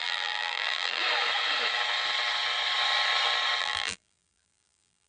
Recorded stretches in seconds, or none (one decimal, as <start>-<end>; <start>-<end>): 1.0-3.6